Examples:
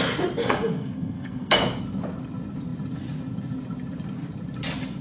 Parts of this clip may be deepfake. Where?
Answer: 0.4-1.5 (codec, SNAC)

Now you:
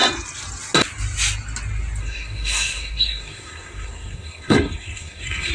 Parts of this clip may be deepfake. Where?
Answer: 2.0-5.5 (codec, SNAC)

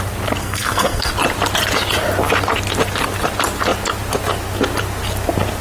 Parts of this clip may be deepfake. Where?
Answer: 0.4-1.1 (codec, SNAC)

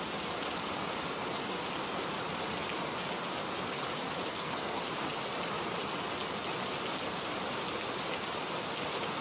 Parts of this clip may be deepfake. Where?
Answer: 4.3-4.8 (codec, SNAC)

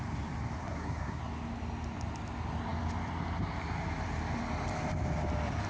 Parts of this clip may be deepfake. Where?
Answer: 0.6-1.2 (codec, SNAC)